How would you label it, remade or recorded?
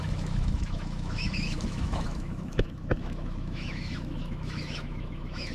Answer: remade